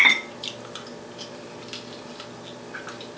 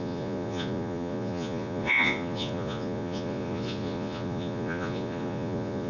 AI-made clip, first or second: second